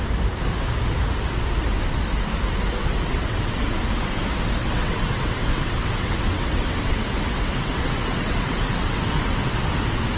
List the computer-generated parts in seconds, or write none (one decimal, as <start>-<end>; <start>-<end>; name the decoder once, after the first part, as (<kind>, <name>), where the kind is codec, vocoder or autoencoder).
2.8-3.6 (vocoder, WaveNeXt); 4.6-9.4